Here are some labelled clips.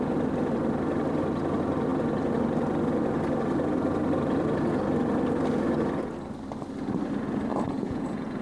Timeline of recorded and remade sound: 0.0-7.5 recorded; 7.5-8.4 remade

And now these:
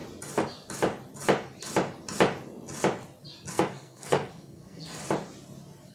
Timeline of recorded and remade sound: 0.0-3.5 recorded; 3.5-4.9 remade; 4.9-5.9 recorded

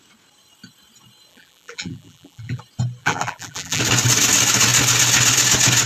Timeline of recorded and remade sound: 0.0-1.3 recorded; 1.3-2.6 remade; 2.6-3.0 recorded; 3.0-3.8 remade; 3.8-5.9 recorded

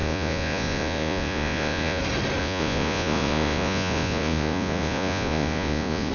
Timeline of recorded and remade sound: 0.0-2.0 remade; 2.0-2.4 recorded; 2.4-6.1 remade

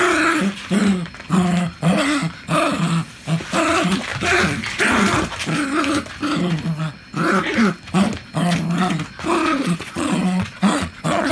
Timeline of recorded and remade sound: 0.0-9.4 recorded; 9.4-11.3 remade

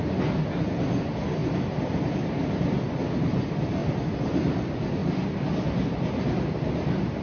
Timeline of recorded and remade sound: 0.0-7.2 recorded